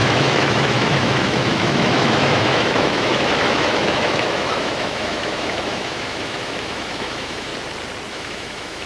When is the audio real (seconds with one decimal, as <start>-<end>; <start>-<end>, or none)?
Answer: 7.5-8.1